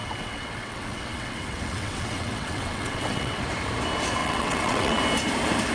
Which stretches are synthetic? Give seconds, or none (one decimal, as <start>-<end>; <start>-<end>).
0.0-3.4; 4.2-5.0